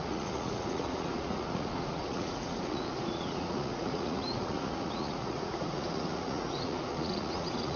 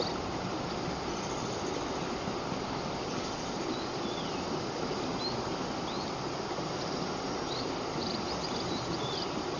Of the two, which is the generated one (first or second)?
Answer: first